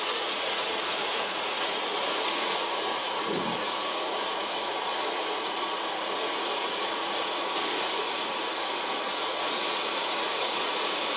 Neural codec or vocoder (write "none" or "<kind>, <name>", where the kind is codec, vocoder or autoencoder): vocoder, Vocos